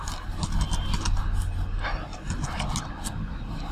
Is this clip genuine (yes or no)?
yes